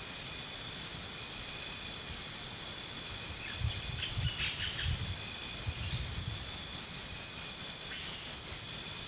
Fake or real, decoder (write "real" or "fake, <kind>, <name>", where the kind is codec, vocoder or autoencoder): real